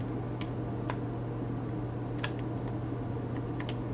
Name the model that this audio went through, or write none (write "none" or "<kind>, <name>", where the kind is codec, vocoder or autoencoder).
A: none